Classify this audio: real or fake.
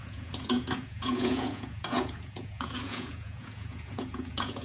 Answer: fake